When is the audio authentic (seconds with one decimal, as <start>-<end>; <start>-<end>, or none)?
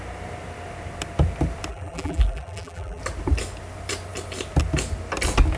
0.0-1.7; 3.0-5.6